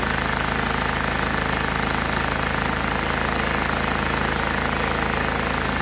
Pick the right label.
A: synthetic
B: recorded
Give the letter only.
B